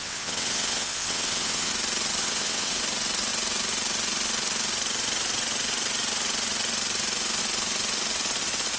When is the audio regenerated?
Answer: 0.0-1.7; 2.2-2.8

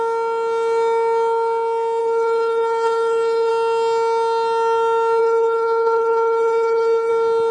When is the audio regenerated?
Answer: 2.0-3.5; 5.2-7.1

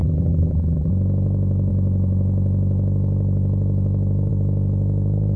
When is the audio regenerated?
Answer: 0.0-0.9

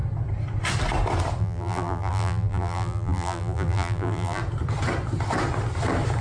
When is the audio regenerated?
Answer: 1.4-4.4

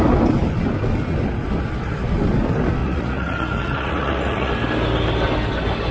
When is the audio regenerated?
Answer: 2.8-4.5

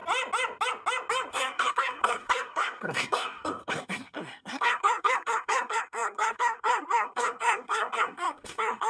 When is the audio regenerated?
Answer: 1.3-8.9

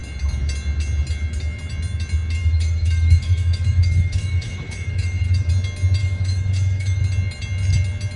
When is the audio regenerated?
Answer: 2.4-5.5; 6.0-7.0

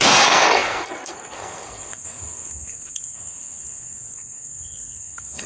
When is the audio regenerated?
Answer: 0.0-5.5